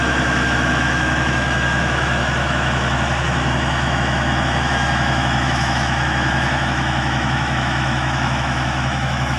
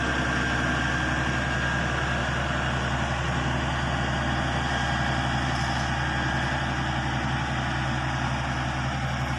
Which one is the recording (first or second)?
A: second